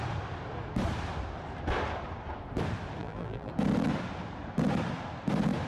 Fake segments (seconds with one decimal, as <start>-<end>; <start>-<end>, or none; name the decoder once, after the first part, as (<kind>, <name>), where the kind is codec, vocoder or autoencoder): 3.0-3.5 (vocoder, BigVGAN v2)